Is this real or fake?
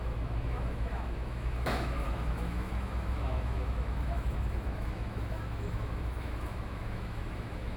fake